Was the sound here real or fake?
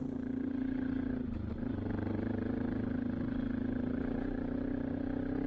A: real